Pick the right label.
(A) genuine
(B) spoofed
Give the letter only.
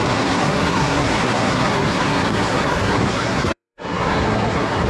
B